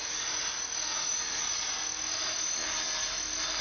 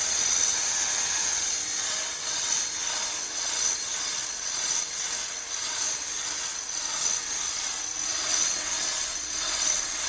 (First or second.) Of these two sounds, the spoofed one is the second